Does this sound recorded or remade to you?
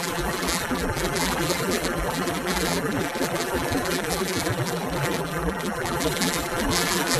remade